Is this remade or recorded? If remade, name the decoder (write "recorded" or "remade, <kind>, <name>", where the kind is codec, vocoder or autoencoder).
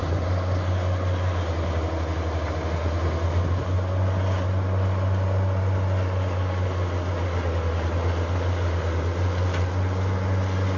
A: recorded